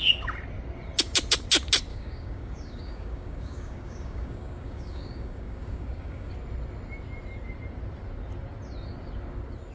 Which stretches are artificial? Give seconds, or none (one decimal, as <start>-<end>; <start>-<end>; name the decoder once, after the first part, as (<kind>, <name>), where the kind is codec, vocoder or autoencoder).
1.9-6.3 (codec, DAC)